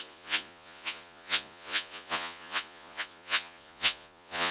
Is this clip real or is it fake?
fake